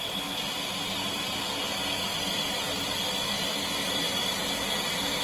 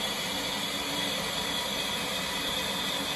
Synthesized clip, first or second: second